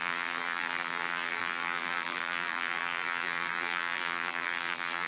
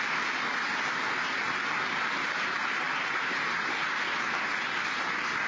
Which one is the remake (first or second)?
first